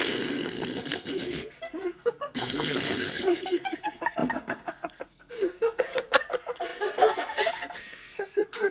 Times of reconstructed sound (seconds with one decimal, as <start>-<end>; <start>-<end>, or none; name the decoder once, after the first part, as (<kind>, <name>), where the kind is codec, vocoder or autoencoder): 0.0-8.7 (codec, SNAC)